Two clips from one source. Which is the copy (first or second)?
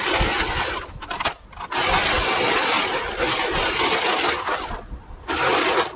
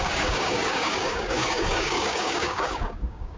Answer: second